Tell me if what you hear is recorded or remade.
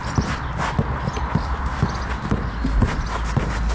recorded